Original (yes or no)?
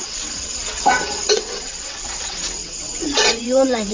no